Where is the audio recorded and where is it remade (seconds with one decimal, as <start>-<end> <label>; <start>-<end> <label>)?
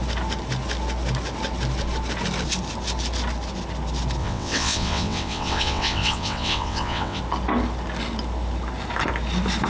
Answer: 0.0-4.2 recorded; 4.2-7.2 remade; 7.2-9.7 recorded